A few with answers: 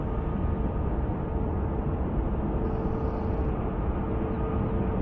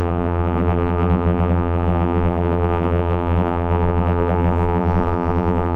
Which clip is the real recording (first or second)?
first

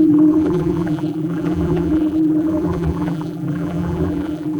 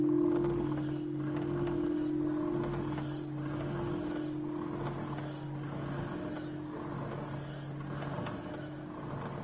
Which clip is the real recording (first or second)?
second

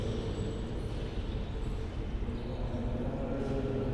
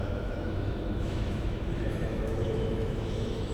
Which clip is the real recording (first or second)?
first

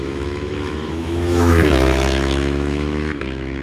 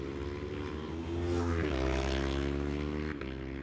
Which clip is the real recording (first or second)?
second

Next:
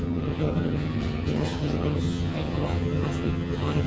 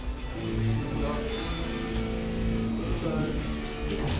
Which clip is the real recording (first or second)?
second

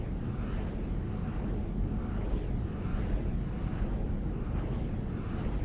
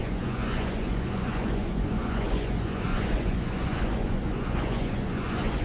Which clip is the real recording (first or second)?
first